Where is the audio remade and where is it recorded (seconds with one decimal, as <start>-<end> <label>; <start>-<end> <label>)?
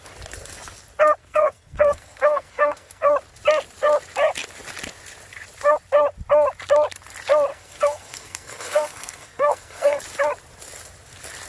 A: 0.0-1.2 recorded; 1.2-3.1 remade; 3.1-7.5 recorded; 7.5-10.0 remade; 10.0-11.5 recorded